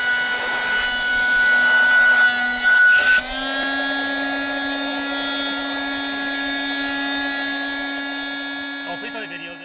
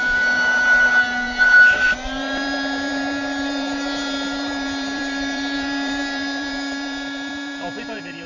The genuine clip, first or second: first